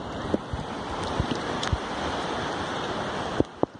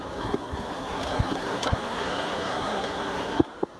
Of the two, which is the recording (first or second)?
first